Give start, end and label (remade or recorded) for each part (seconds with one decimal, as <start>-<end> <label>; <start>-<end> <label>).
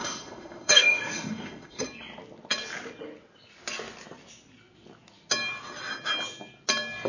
0.0-1.8 remade; 1.8-7.1 recorded